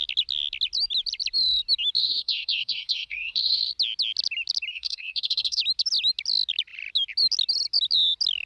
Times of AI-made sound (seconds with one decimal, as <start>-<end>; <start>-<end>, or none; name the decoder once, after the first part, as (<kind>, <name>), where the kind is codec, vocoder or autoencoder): 2.0-3.7 (codec, SNAC); 4.7-5.6